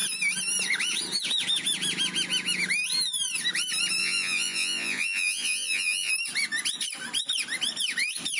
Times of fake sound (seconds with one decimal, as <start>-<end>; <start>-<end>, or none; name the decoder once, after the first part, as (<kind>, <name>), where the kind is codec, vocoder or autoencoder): 4.0-6.1 (vocoder, Vocos)